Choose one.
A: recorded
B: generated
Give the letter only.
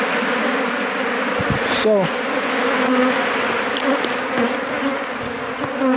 A